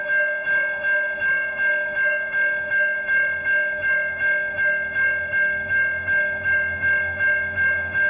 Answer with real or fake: fake